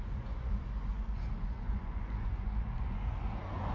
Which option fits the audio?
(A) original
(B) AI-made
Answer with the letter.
B